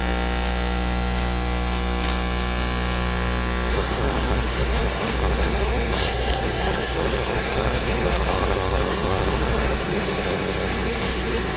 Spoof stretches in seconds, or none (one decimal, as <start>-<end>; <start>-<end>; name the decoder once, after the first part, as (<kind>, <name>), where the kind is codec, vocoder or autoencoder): 3.7-11.6 (codec, SNAC)